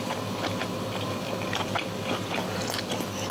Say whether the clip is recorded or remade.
recorded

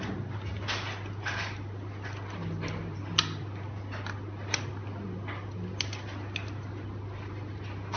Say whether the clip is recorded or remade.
recorded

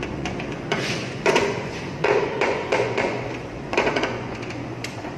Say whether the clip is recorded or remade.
remade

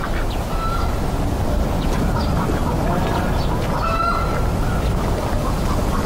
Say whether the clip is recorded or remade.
recorded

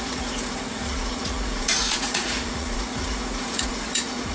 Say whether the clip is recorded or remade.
remade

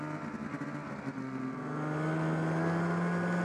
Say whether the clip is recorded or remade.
recorded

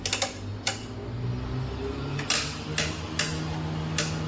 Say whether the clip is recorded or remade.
recorded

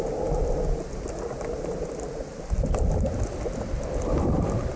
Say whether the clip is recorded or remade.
recorded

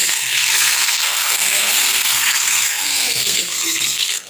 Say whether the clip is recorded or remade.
remade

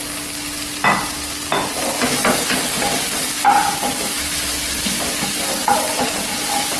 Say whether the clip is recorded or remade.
recorded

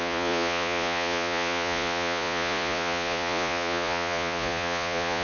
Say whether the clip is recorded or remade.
remade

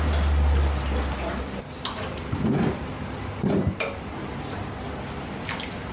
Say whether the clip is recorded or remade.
recorded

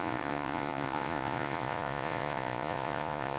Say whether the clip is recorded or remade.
remade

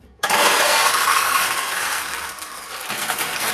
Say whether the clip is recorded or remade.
remade